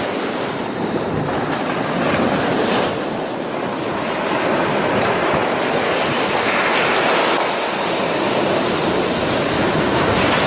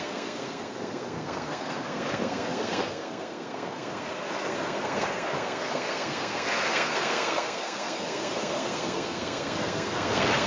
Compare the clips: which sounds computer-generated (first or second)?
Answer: second